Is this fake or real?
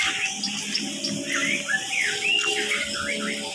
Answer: real